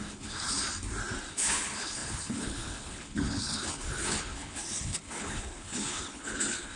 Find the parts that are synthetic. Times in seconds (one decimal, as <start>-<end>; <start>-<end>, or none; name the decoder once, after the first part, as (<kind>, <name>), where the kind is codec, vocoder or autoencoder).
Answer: 0.0-0.6 (codec, HILCodec); 1.3-6.8

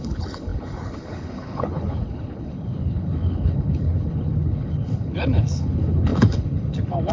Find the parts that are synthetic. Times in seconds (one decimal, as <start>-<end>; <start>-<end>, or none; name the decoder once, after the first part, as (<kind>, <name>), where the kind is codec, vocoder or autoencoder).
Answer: 0.0-7.1 (codec, HILCodec)

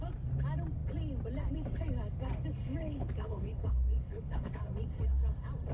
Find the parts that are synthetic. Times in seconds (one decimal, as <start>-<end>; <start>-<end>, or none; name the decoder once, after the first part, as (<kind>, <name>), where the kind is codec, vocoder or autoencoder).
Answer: 2.8-4.6 (codec, HILCodec)

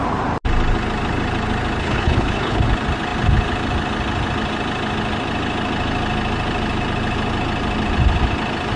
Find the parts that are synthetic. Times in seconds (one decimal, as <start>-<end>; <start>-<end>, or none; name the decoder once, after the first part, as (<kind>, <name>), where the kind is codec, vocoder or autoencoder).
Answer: 1.8-2.6 (codec, HILCodec)

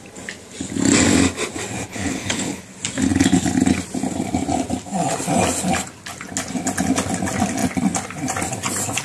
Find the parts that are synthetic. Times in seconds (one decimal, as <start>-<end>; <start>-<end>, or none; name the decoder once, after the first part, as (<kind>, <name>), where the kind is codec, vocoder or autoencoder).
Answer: 1.9-2.6 (codec, HILCodec)